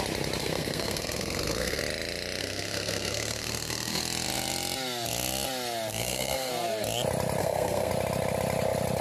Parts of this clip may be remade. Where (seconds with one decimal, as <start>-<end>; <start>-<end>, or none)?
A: 0.4-1.8; 2.4-4.0; 5.9-6.5; 7.4-7.9